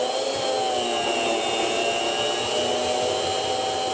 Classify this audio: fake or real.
real